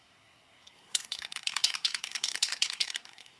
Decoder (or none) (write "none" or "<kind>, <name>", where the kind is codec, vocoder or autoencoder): codec, SNAC